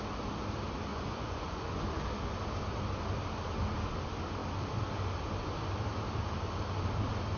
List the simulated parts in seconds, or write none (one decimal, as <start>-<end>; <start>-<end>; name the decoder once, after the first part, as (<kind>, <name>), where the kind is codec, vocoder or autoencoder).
0.9-1.8 (vocoder, Vocos)

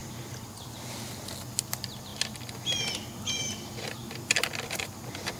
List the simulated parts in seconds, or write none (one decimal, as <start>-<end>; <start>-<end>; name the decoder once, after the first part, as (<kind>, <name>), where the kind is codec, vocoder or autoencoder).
0.0-1.0 (vocoder, BigVGAN v2)

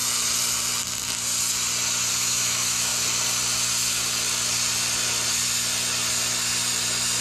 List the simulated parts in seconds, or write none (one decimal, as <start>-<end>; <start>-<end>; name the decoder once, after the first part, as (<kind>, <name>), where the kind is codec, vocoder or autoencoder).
2.1-2.9 (autoencoder, DAC-VAE)